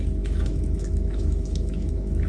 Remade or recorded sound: remade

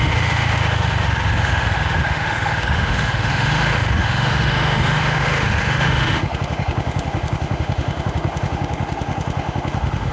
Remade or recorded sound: remade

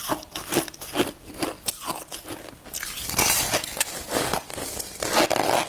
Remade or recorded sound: recorded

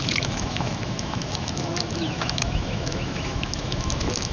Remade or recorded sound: remade